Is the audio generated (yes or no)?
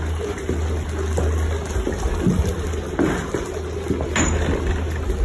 no